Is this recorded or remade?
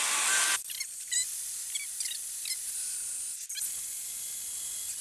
recorded